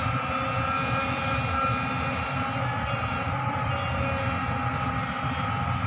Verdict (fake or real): real